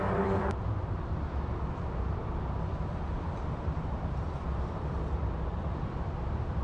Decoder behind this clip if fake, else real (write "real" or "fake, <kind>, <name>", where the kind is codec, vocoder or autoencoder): fake, vocoder, BigVGAN v2